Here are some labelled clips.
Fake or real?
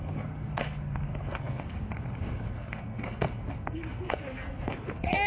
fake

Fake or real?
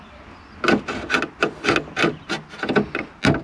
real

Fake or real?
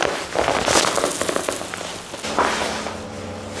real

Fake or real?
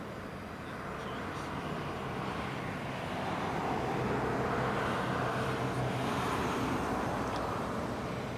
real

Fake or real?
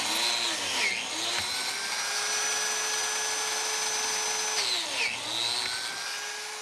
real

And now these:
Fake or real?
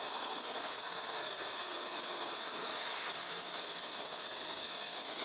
fake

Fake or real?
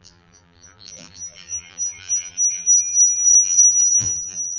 fake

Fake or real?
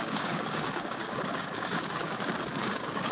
fake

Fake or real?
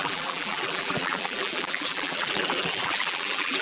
fake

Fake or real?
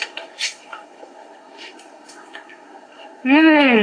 fake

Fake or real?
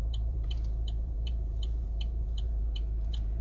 fake